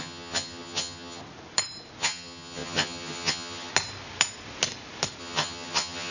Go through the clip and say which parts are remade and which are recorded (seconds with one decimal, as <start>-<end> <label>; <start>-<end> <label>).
0.0-1.2 remade; 1.2-2.0 recorded; 2.0-3.7 remade; 3.7-5.2 recorded; 5.2-6.1 remade